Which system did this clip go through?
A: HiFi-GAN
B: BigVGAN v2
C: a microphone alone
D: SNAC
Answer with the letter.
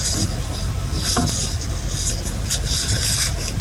C